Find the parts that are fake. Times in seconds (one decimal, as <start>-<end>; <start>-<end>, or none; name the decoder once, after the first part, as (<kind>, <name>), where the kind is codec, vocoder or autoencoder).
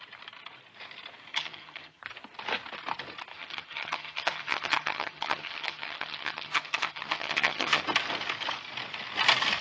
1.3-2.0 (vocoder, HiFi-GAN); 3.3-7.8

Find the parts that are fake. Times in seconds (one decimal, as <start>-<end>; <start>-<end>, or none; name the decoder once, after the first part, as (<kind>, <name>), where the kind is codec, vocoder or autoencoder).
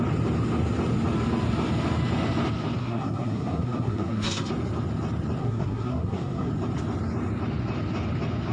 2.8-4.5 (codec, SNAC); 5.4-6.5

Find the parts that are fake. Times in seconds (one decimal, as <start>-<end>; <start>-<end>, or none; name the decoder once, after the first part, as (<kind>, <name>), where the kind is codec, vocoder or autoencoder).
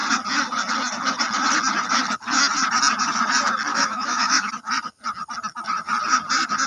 3.7-4.5 (autoencoder, DAC-VAE)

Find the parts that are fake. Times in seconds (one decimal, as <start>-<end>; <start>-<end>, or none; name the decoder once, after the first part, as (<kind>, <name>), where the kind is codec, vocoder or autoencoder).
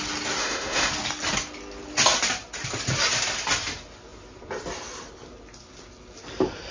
0.4-0.9 (autoencoder, DAC-VAE)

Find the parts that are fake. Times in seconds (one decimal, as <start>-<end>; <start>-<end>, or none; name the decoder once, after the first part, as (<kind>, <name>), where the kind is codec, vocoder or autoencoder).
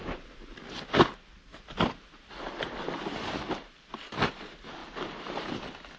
none